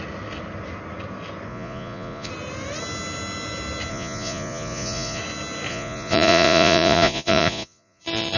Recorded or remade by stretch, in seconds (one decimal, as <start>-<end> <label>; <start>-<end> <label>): 0.0-1.5 recorded; 1.5-2.3 remade; 2.3-3.9 recorded; 3.9-5.2 remade; 5.2-5.7 recorded; 5.7-8.0 remade; 8.0-8.4 recorded

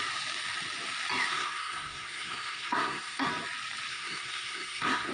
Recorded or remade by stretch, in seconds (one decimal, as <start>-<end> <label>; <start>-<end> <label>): 0.0-1.3 recorded; 1.3-3.3 remade; 3.3-3.9 recorded; 3.9-5.1 remade

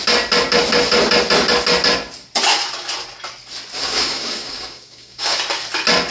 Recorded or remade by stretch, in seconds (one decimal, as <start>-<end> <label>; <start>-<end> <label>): 0.0-3.8 recorded; 3.8-5.4 remade; 5.4-6.1 recorded

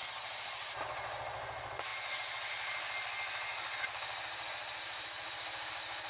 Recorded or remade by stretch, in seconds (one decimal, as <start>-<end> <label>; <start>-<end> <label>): 0.0-3.5 recorded; 3.5-5.3 remade; 5.3-6.1 recorded

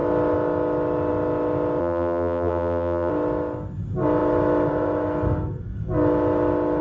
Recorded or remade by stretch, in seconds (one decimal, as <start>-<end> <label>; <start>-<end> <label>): 0.0-1.8 recorded; 1.8-3.1 remade; 3.1-6.8 recorded

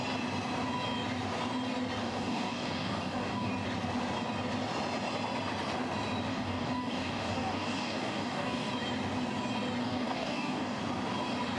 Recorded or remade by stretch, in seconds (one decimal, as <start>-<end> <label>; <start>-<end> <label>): 0.0-2.0 recorded; 2.0-3.5 remade; 3.5-6.3 recorded; 6.3-8.7 remade; 8.7-9.8 recorded; 9.8-10.8 remade; 10.8-11.6 recorded

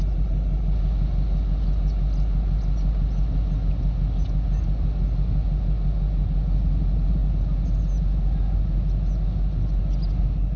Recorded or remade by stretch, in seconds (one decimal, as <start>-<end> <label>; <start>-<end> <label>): 0.0-10.6 recorded

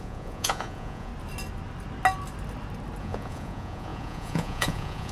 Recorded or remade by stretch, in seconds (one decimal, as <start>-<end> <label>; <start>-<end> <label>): 0.0-1.1 remade; 1.1-3.0 recorded; 3.0-5.1 remade